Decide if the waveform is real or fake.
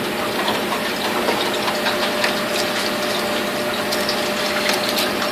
fake